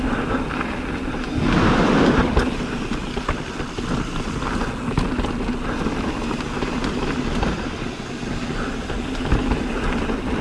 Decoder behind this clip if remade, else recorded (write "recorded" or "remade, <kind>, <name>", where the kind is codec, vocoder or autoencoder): recorded